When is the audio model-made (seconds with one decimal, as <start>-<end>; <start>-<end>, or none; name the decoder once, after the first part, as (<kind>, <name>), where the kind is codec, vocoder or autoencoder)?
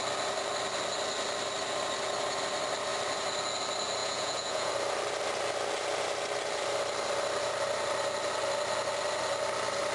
4.0-4.7 (vocoder, Vocos)